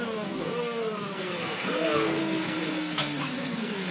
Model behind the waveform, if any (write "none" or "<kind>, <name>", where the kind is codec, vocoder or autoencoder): codec, SNAC